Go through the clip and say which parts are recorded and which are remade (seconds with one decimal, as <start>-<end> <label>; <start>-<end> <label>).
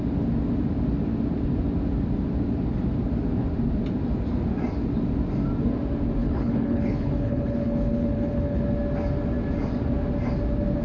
0.0-6.2 recorded; 6.2-8.6 remade; 8.6-10.8 recorded